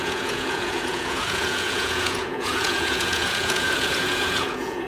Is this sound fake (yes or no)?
yes